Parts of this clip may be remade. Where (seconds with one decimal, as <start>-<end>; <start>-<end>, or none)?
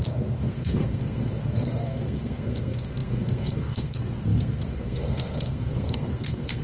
0.0-6.6